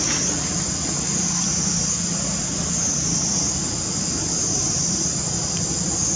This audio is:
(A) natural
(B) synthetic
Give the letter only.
A